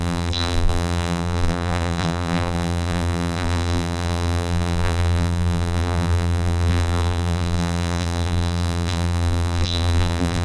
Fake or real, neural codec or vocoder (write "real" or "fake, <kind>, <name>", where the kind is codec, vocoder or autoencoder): fake, vocoder, BigVGAN v2